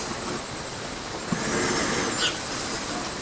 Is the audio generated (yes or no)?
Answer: no